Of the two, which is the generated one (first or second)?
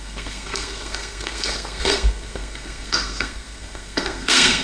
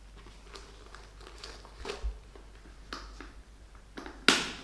first